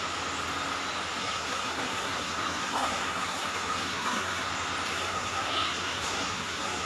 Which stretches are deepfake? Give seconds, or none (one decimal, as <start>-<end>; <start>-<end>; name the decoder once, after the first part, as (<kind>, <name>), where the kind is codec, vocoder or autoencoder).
1.2-4.5 (codec, SNAC); 4.9-6.9